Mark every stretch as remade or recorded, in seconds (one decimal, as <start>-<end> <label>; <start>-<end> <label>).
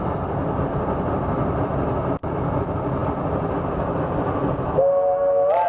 0.0-5.7 recorded